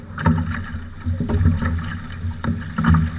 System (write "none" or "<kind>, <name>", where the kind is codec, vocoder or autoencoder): none